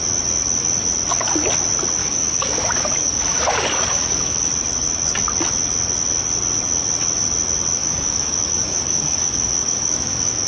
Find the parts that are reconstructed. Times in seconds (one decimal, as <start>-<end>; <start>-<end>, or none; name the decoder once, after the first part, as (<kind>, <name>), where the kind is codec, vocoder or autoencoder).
2.0-4.5 (codec, DAC); 7.8-10.5